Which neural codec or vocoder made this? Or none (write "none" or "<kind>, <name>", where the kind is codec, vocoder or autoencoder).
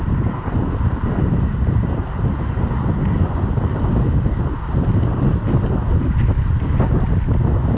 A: none